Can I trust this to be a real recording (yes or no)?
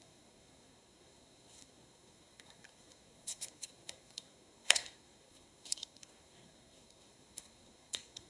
no